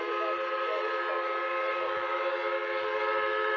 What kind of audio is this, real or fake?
real